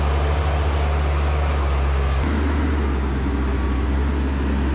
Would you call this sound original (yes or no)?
yes